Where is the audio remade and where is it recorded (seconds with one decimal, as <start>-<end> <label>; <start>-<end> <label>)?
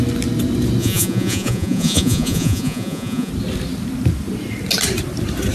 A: 0.0-0.8 recorded; 0.8-3.3 remade; 3.3-5.5 recorded